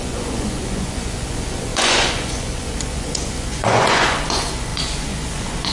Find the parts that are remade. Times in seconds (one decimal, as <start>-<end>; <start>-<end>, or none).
0.0-5.7